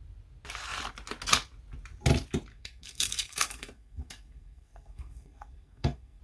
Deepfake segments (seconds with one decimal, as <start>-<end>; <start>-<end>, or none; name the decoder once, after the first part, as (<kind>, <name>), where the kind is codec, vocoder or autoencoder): 2.5-6.2 (codec, SNAC)